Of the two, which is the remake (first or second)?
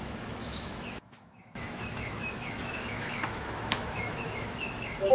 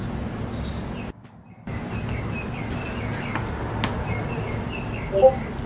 first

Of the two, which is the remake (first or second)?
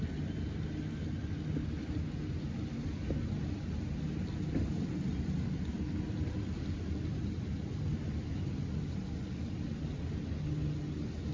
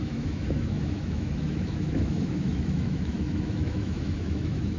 second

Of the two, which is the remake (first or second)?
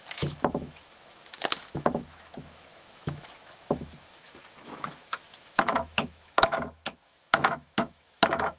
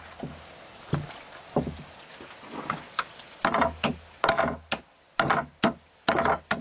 first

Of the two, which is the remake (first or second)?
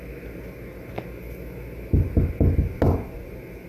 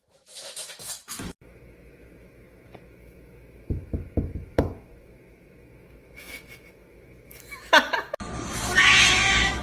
second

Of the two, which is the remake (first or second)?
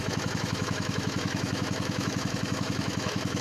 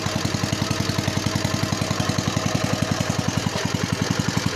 first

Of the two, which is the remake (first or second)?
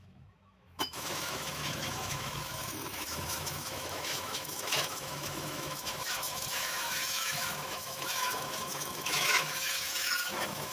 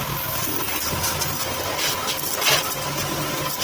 first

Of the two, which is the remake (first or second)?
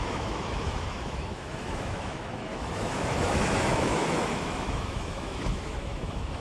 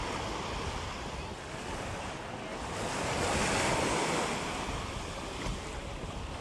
first